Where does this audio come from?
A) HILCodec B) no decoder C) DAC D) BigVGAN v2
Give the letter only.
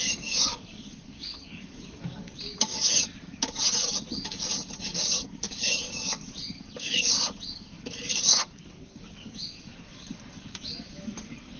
C